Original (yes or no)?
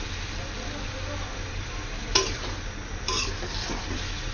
yes